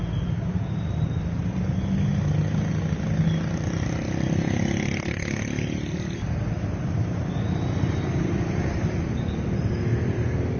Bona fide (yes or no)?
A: yes